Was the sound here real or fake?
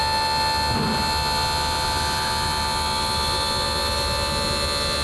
real